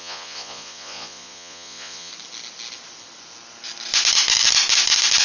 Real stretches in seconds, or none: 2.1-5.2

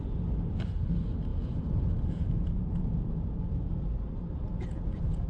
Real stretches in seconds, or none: 0.0-1.3; 3.7-4.5

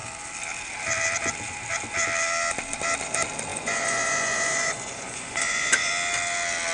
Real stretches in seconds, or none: 0.0-3.5; 5.9-6.7

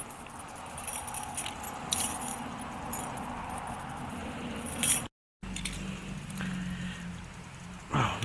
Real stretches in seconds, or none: 0.0-8.2

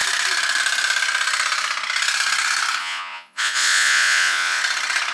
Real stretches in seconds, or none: 0.0-2.8; 4.6-5.1